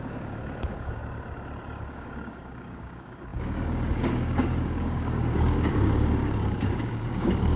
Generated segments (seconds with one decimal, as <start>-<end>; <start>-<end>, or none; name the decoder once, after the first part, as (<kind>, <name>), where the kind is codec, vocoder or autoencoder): 0.0-1.0 (codec, DAC); 1.8-7.6